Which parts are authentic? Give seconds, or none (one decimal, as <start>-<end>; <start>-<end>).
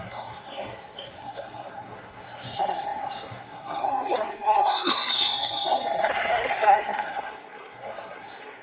none